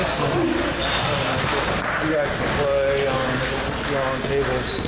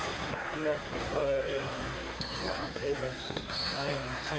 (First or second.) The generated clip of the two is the second